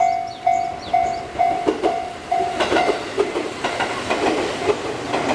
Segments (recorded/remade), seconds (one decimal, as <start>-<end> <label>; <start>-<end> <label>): 0.0-0.7 recorded; 0.7-3.9 remade; 3.9-5.3 recorded